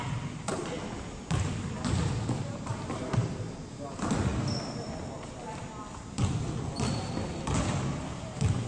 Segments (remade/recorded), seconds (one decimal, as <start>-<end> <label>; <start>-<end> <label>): 0.0-8.7 recorded